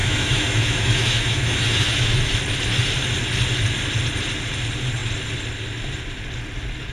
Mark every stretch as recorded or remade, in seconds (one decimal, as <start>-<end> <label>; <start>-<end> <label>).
0.0-2.2 remade; 2.2-6.9 recorded